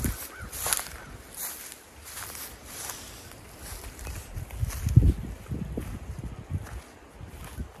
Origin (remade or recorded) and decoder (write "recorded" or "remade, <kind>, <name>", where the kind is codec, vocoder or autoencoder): recorded